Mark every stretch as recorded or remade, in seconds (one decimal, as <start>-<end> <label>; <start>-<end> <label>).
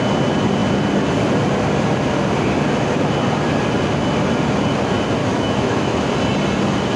0.0-5.2 recorded; 5.2-6.0 remade; 6.0-7.0 recorded